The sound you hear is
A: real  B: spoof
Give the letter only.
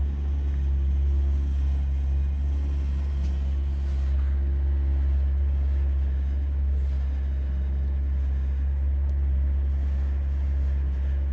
A